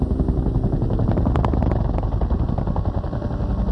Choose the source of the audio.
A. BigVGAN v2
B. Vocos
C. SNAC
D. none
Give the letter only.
D